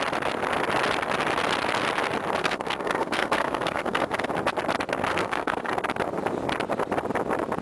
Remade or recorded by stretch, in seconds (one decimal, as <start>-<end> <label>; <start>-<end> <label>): 0.0-2.4 recorded; 2.4-4.3 remade; 4.3-5.1 recorded; 5.1-5.7 remade; 5.7-7.6 recorded